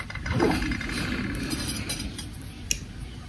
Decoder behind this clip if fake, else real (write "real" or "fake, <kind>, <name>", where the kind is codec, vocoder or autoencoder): real